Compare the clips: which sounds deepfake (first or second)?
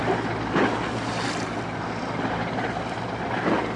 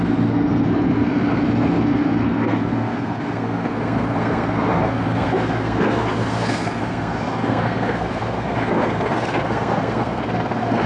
second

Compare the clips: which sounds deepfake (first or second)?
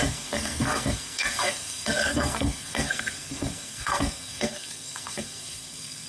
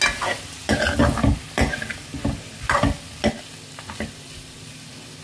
first